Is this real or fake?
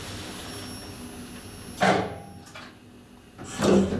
real